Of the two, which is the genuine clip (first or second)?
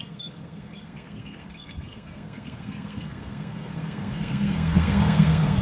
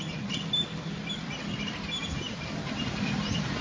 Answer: second